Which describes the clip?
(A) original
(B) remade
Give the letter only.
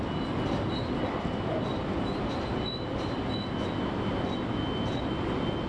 A